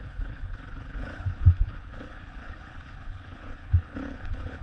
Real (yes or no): no